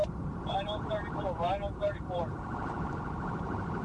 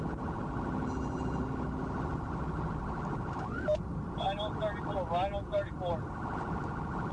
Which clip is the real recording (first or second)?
second